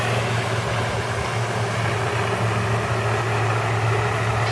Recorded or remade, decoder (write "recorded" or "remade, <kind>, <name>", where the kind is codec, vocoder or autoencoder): recorded